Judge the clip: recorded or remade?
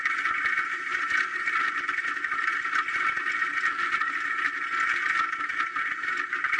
recorded